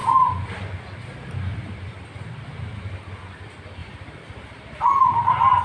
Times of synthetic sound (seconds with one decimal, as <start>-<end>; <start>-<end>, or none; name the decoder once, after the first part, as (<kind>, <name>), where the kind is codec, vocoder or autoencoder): 0.0-1.0 (vocoder, BigVGAN v2); 1.5-2.0; 3.8-5.0